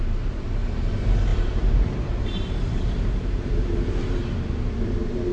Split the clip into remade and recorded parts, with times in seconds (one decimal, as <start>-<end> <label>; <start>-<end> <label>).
0.0-1.3 recorded; 1.3-4.2 remade; 4.2-5.3 recorded